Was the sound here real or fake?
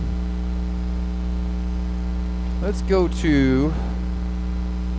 real